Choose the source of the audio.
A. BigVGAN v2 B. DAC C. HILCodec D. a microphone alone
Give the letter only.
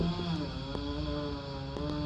D